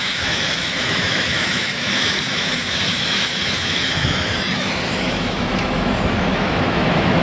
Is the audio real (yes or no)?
no